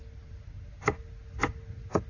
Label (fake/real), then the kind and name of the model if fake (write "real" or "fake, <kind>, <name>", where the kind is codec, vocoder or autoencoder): real